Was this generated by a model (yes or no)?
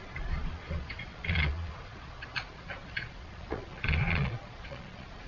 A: yes